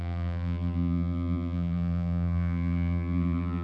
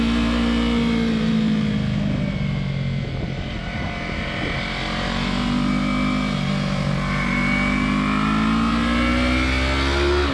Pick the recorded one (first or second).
second